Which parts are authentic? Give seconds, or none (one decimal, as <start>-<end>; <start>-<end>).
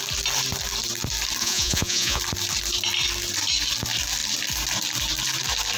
0.0-1.4; 2.2-5.8